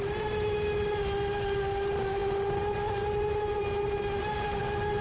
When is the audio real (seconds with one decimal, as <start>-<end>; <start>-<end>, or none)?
0.0-5.0